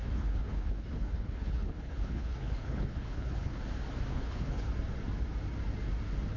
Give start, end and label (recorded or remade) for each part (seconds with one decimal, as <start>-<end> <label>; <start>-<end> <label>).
0.0-3.6 remade; 3.6-4.1 recorded; 4.1-4.7 remade; 4.7-6.4 recorded